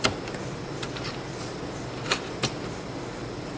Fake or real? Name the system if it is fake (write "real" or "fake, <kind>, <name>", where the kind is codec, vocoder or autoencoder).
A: real